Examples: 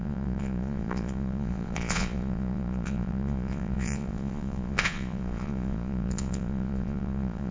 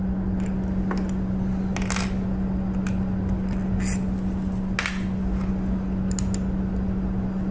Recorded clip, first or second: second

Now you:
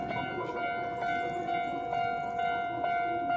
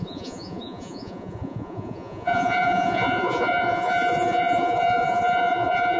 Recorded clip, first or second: first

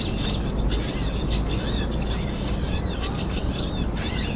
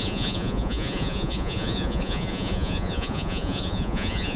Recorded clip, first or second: first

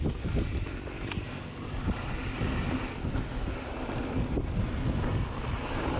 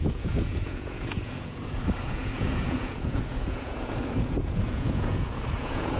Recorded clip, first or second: first